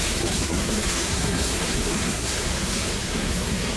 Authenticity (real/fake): fake